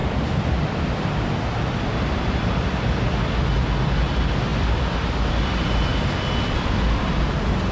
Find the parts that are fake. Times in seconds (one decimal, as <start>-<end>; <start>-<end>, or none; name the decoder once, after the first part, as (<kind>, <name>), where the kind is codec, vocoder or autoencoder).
none